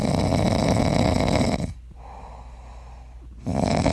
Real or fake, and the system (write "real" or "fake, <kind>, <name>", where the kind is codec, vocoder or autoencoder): real